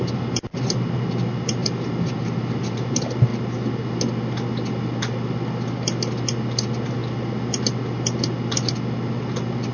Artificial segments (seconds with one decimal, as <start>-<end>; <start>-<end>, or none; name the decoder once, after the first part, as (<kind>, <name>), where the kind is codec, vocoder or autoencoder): 1.6-2.9 (vocoder, BigVGAN v2)

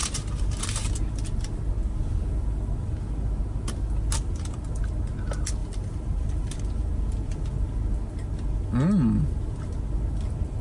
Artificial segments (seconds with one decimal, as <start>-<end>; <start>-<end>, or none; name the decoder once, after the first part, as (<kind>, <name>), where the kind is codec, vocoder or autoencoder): 0.0-0.6 (vocoder, BigVGAN v2); 5.6-6.6

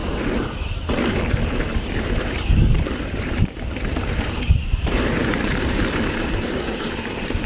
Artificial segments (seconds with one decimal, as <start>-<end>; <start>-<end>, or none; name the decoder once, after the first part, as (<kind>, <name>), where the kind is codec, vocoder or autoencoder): 1.1-7.5 (vocoder, BigVGAN v2)

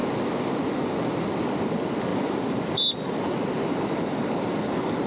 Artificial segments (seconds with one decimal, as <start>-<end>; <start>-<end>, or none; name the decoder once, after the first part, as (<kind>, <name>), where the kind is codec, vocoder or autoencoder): 2.1-4.3 (vocoder, BigVGAN v2)

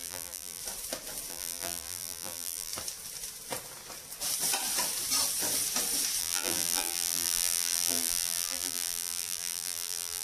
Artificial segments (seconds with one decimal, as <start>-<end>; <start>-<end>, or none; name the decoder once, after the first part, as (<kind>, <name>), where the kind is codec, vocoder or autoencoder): 0.0-0.6 (vocoder, BigVGAN v2); 1.3-2.7; 6.2-10.2

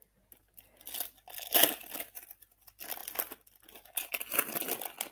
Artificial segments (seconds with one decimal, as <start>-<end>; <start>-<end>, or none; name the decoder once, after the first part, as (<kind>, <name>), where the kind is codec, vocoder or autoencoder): 1.6-2.4 (vocoder, BigVGAN v2); 3.0-4.5

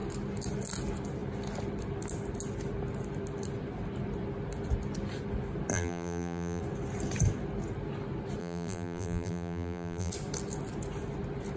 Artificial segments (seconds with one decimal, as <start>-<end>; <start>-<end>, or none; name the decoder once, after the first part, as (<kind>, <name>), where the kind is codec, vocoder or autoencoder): 5.7-6.6 (vocoder, BigVGAN v2); 8.4-10.1

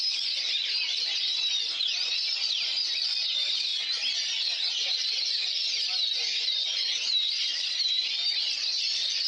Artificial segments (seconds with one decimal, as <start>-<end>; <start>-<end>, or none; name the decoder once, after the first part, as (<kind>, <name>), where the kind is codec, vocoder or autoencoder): 0.0-3.7 (vocoder, BigVGAN v2); 6.4-9.3